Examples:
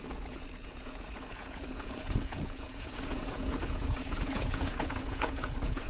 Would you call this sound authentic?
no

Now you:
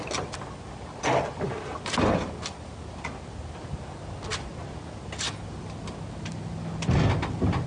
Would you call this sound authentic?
yes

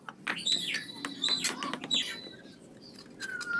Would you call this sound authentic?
yes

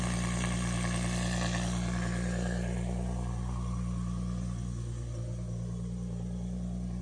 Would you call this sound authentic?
yes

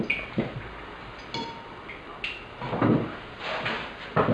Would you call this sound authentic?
yes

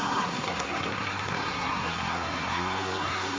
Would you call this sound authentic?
no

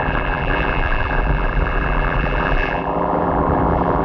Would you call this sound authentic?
no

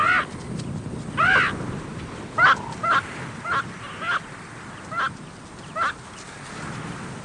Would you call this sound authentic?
yes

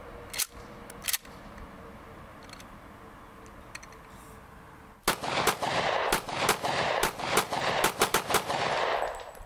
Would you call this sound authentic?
yes